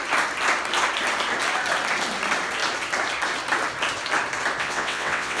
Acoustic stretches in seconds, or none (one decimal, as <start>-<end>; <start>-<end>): 0.0-4.6